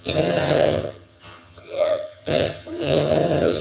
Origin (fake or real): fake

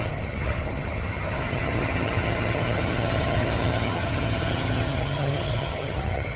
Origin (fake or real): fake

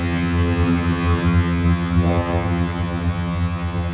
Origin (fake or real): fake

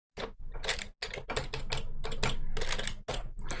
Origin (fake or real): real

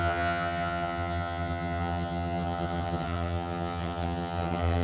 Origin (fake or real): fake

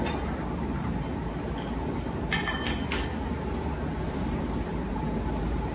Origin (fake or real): real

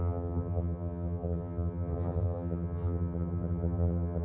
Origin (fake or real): fake